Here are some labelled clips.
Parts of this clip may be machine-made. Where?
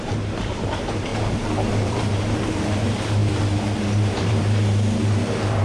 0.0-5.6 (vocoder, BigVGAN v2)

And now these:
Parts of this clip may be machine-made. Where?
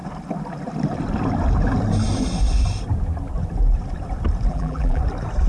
4.5-5.0 (vocoder, BigVGAN v2)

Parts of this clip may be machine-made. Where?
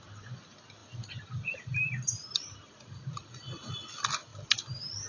0.8-1.5 (vocoder, BigVGAN v2); 2.1-3.3; 4.3-5.1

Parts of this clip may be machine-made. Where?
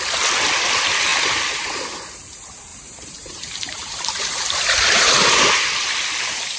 2.7-5.4 (vocoder, BigVGAN v2)